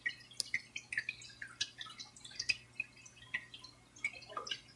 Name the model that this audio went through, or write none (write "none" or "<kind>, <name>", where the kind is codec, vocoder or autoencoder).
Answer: none